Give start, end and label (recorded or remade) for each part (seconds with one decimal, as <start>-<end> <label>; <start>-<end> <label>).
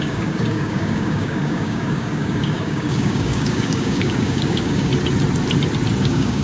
0.0-4.9 remade; 4.9-6.0 recorded; 6.0-6.4 remade